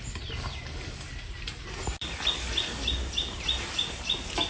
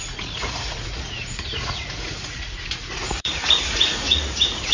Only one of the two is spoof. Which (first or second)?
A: second